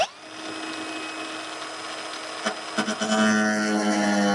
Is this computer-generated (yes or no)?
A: no